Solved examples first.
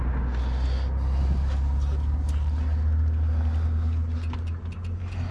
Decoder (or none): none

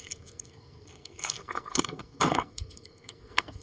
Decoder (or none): codec, SNAC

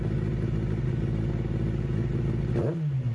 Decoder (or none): none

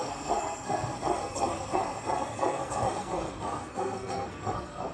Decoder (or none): codec, SNAC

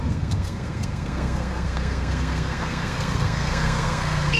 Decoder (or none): codec, SNAC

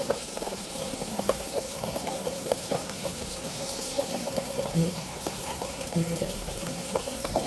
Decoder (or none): codec, SNAC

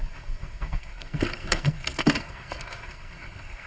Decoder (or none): codec, SNAC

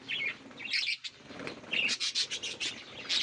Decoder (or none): none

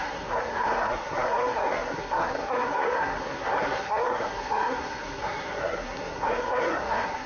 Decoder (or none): codec, SNAC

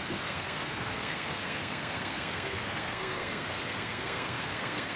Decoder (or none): codec, SNAC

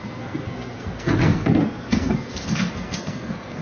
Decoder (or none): codec, SNAC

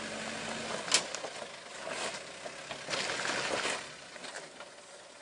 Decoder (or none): none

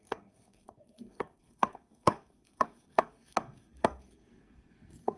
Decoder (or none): codec, SNAC